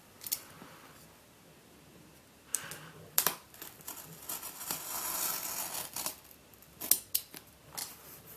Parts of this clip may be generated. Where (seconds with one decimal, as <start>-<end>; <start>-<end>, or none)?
2.5-4.8; 7.8-8.4